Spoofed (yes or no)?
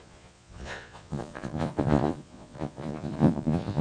yes